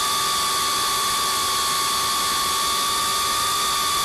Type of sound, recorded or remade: recorded